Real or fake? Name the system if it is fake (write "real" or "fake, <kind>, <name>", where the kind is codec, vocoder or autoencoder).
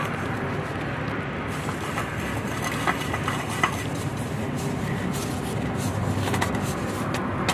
real